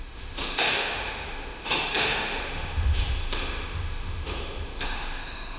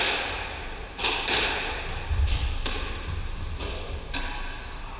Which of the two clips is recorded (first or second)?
second